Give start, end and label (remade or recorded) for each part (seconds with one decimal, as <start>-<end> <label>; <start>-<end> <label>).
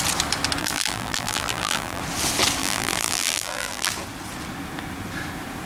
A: 0.0-0.6 recorded; 0.6-2.0 remade; 2.0-2.6 recorded; 2.6-3.9 remade; 3.9-5.7 recorded